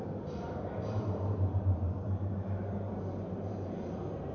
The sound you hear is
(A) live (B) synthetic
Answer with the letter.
B